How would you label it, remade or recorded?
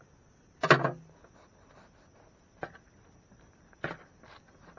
recorded